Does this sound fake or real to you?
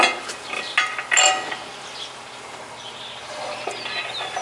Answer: real